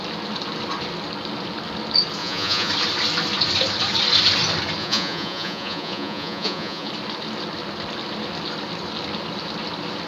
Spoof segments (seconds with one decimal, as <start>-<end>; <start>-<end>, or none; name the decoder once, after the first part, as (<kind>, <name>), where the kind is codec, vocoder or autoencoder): 2.2-2.7 (vocoder, Vocos); 4.8-6.9

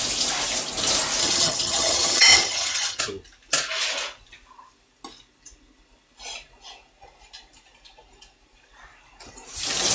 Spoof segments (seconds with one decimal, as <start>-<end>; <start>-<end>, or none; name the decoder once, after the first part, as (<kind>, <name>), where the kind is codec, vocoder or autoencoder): 1.2-3.0 (vocoder, HiFi-GAN)

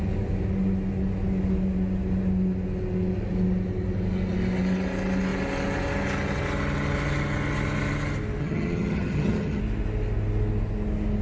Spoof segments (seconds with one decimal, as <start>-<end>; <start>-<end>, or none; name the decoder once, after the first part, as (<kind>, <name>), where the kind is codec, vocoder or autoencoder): 8.4-9.6 (vocoder, HiFi-GAN)

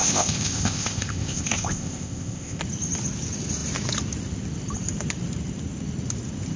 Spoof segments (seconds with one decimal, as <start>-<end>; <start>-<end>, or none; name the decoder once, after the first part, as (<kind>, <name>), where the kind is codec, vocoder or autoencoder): 0.0-2.6 (codec, ZipCodec)